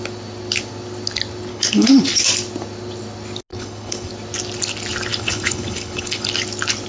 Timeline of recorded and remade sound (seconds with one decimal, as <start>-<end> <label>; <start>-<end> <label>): 0.0-1.5 recorded; 1.5-2.1 remade; 2.1-3.5 recorded; 3.5-4.1 remade; 4.1-5.1 recorded; 5.1-6.3 remade; 6.3-6.9 recorded